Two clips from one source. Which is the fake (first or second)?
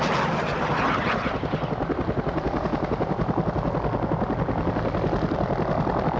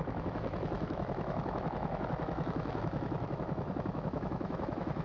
second